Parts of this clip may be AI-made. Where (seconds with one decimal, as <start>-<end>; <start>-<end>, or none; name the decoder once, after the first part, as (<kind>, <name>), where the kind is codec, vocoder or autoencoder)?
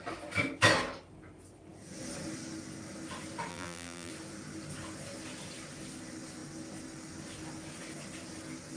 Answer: 3.5-4.1 (vocoder, BigVGAN v2)